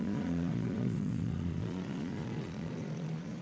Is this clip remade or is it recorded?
remade